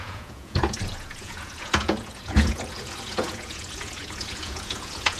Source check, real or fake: fake